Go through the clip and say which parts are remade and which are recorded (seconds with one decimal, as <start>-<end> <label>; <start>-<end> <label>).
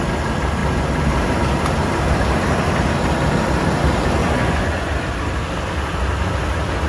0.0-4.2 recorded; 4.2-4.9 remade; 4.9-6.9 recorded